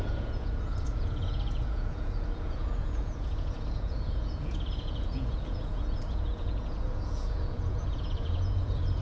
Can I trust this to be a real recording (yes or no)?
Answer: no